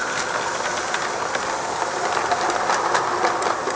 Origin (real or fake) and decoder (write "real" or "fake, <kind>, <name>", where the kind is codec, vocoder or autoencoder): real